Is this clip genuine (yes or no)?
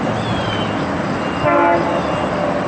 yes